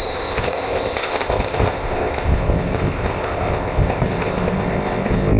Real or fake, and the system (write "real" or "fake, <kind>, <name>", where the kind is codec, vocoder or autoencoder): fake, codec, ZipCodec